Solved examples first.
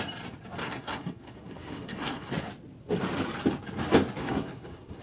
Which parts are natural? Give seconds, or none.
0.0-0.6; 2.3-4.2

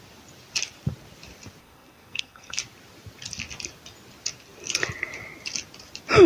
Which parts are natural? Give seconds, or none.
0.0-1.6; 2.6-6.3

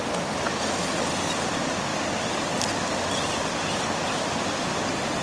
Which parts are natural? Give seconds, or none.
0.0-5.2

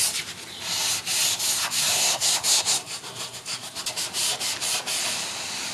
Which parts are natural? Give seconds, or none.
0.0-1.6; 3.8-5.7

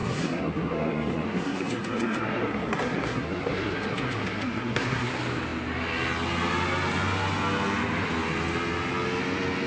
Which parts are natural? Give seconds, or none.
5.1-9.7

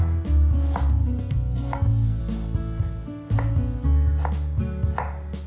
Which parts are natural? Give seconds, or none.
0.0-1.0; 2.2-5.5

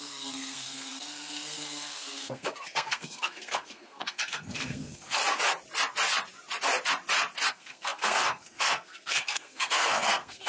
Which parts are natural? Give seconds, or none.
5.2-7.5